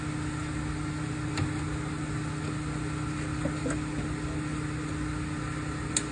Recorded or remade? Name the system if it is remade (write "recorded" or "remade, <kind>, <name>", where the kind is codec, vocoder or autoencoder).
recorded